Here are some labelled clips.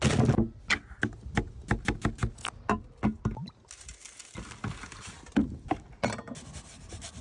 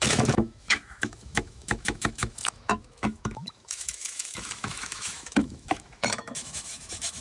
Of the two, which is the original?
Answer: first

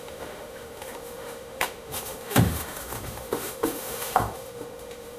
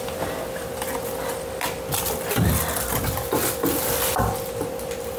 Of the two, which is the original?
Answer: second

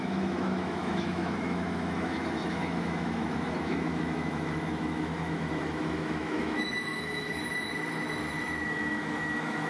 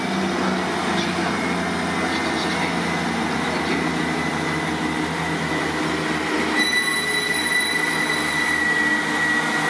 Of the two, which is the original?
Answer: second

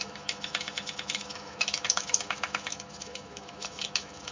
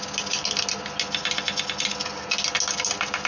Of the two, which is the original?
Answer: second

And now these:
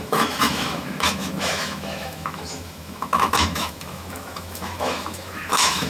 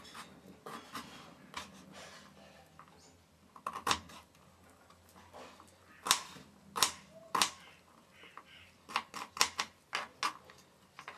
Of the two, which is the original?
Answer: second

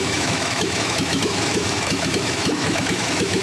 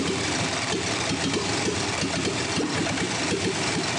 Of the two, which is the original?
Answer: second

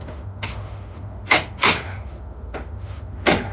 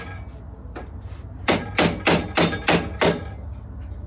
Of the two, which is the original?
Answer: second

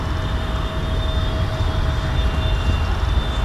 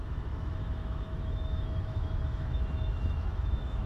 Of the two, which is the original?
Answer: first